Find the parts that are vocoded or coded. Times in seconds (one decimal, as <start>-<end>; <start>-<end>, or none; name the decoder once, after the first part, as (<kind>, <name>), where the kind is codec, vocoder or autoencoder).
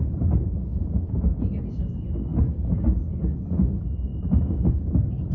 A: 0.7-1.6 (vocoder, Vocos)